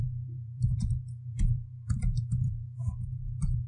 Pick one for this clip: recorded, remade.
remade